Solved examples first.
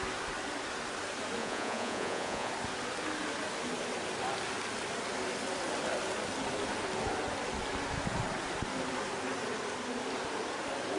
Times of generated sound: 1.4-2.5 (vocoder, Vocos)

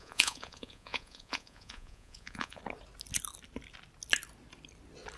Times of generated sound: 0.0-2.6 (vocoder, Vocos)

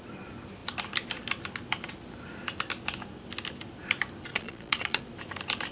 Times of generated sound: 4.3-5.0 (vocoder, Vocos)

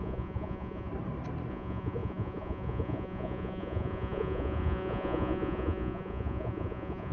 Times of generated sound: 0.0-0.9 (vocoder, Vocos); 1.5-7.1

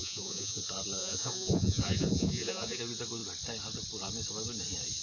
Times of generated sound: 0.0-0.6 (vocoder, Vocos); 1.0-2.8

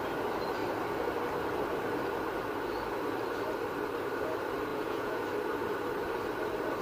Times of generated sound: 4.7-5.2 (vocoder, Vocos)

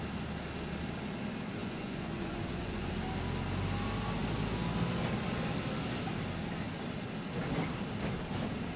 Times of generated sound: 1.6-2.9 (vocoder, Vocos)

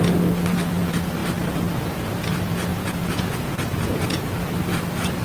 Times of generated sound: 2.7-4.3 (vocoder, Vocos)